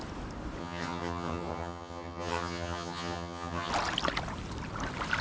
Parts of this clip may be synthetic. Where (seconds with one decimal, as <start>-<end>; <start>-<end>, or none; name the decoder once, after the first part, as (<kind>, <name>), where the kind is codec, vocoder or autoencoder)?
0.6-3.7 (vocoder, HiFi-GAN)